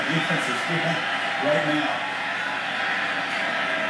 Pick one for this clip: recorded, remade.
recorded